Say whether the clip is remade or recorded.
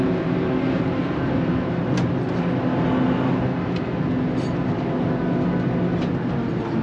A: recorded